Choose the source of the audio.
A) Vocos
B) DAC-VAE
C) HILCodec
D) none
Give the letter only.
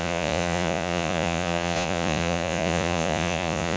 A